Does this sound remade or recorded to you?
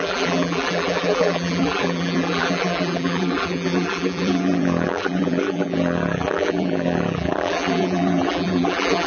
remade